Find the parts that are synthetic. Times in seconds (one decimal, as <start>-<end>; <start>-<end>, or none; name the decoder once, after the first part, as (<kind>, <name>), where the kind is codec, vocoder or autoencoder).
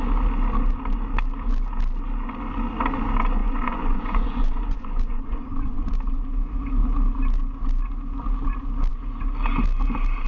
3.4-5.9 (vocoder, Vocos)